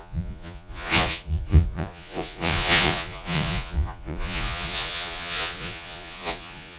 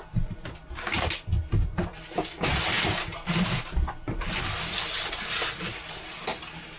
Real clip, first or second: second